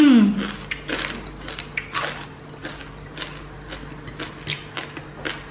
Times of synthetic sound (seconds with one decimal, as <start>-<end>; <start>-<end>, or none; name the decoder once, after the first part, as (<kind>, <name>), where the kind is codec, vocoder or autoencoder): none